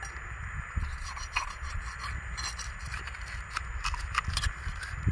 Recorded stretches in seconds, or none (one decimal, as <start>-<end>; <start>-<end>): 0.0-0.8; 1.8-5.1